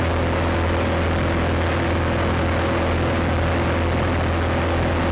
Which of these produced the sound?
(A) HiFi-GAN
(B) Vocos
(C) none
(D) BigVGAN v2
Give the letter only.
C